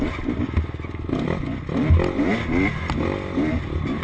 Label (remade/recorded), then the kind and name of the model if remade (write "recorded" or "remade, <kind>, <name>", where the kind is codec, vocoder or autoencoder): recorded